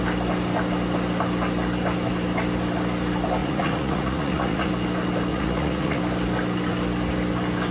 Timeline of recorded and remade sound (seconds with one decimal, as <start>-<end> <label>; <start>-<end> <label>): 0.0-3.4 recorded; 3.4-4.7 remade; 4.7-5.3 recorded; 5.3-6.0 remade; 6.0-7.7 recorded